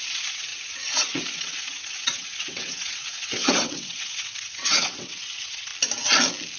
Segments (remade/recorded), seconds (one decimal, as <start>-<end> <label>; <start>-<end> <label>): 0.0-5.7 remade; 5.7-6.6 recorded